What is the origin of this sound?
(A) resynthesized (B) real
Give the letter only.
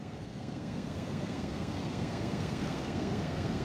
A